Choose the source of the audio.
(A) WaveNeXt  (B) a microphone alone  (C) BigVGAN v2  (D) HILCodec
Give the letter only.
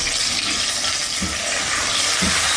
B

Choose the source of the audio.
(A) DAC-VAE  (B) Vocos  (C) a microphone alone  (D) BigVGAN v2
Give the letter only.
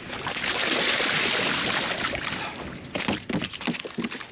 C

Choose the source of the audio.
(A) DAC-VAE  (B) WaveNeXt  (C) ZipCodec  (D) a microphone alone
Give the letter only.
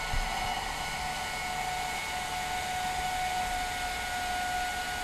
D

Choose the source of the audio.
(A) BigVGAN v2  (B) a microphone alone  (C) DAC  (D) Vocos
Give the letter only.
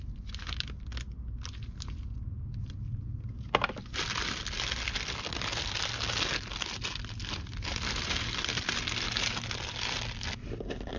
B